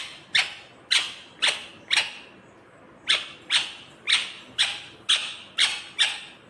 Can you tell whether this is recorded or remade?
recorded